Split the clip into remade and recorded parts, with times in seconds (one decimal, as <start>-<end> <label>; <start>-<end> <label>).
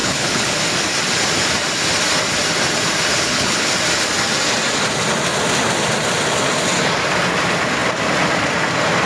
0.0-0.6 remade; 0.6-3.1 recorded; 3.1-3.7 remade; 3.7-9.1 recorded